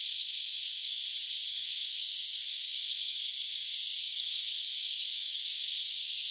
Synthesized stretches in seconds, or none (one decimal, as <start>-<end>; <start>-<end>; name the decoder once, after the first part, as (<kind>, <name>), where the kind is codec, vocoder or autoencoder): 0.0-1.0 (codec, SNAC); 1.5-6.3